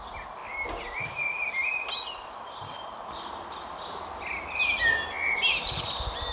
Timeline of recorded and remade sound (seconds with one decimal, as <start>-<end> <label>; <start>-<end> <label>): 0.0-0.4 recorded; 0.4-4.2 remade; 4.2-6.3 recorded